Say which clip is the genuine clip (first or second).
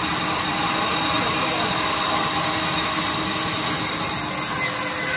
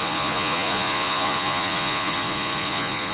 first